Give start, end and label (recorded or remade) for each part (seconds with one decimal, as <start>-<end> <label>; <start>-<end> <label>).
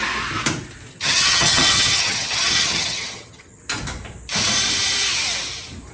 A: 0.0-0.9 recorded; 0.9-3.6 remade; 3.6-5.9 recorded